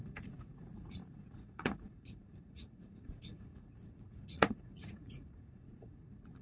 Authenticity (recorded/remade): remade